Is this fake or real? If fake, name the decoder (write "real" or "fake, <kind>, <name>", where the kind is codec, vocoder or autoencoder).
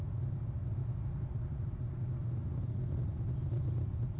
real